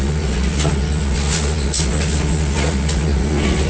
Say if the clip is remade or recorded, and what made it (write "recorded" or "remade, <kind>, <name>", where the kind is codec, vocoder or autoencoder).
remade, vocoder, Vocos